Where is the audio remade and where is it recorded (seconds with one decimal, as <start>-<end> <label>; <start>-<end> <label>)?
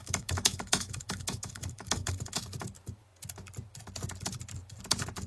0.0-2.4 remade; 2.4-5.3 recorded